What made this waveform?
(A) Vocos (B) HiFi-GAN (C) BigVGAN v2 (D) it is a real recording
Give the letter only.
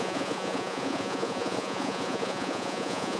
A